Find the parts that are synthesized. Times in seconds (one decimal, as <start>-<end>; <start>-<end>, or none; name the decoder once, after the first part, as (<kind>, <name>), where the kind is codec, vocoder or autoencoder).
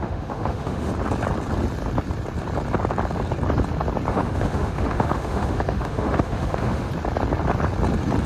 0.0-0.9 (autoencoder, DAC-VAE); 4.1-6.9